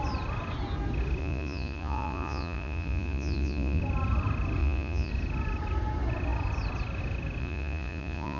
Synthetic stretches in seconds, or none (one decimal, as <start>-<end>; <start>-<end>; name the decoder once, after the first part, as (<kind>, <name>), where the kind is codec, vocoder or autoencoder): 1.2-3.8 (vocoder, Vocos); 4.6-5.1; 7.4-8.4